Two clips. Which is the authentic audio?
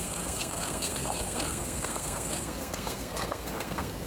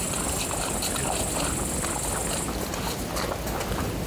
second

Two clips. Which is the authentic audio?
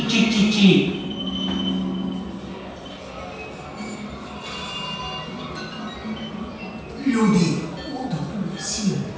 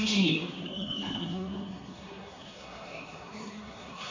first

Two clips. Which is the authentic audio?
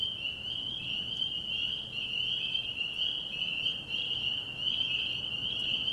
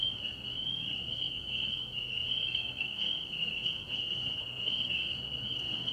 first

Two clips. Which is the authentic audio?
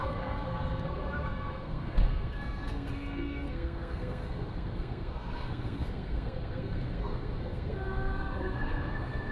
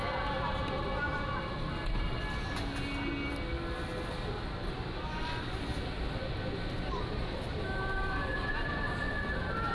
second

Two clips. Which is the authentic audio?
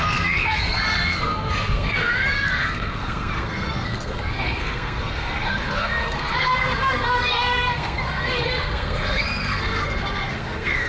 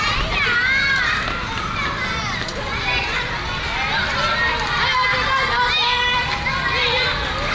second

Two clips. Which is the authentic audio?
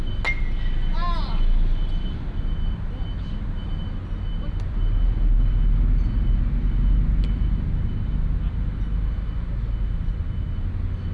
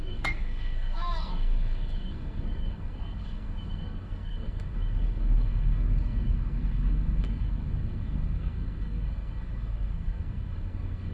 first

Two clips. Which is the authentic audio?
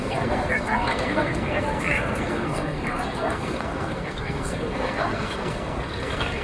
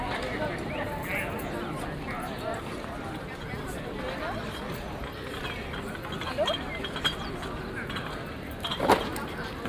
second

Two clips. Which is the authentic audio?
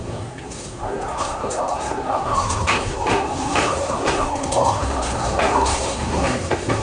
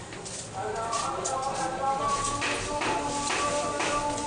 second